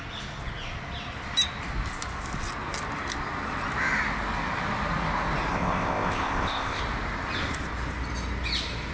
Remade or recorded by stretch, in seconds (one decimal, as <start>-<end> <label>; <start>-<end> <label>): 0.0-5.5 recorded; 5.5-6.8 remade; 6.8-8.9 recorded